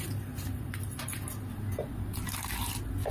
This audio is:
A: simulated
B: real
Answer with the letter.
B